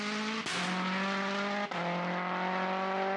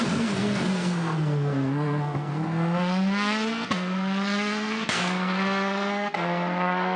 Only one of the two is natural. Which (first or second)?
first